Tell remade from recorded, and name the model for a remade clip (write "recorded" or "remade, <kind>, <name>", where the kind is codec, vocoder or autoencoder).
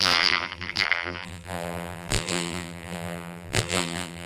remade, vocoder, BigVGAN v2